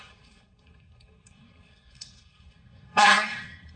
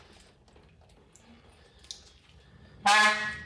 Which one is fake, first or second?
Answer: first